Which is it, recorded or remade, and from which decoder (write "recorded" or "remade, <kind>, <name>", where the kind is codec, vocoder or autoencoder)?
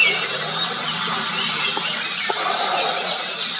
recorded